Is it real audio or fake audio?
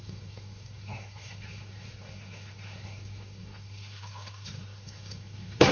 fake